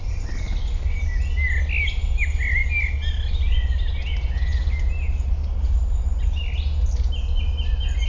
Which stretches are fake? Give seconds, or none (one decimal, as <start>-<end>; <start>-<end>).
none